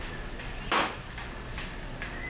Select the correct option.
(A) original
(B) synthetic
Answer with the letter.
A